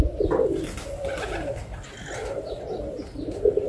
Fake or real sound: real